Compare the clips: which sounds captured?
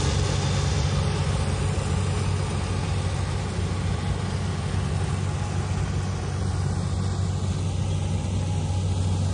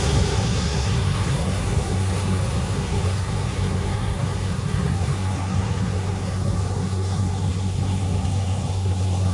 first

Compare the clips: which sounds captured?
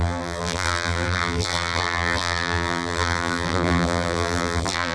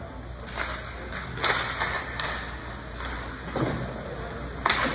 second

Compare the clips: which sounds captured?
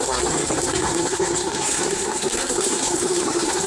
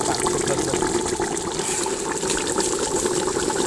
second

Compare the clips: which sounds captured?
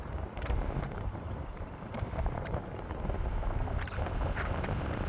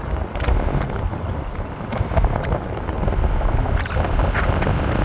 second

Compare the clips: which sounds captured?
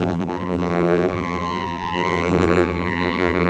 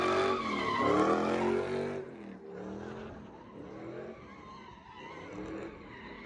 second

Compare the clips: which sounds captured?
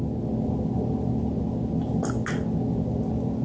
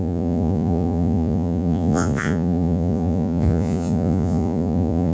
first